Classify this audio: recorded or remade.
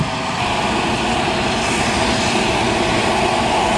recorded